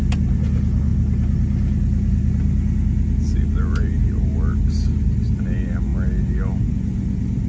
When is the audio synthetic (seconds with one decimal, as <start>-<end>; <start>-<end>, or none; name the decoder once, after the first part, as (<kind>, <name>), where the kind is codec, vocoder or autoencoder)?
none